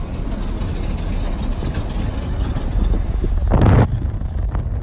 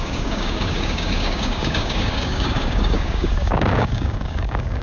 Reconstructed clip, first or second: second